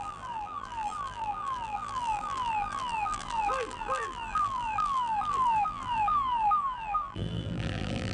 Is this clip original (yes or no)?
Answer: no